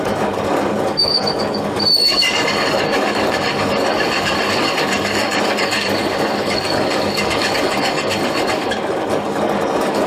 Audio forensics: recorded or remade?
remade